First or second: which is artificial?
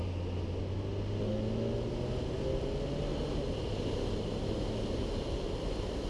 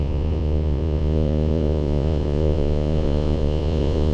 second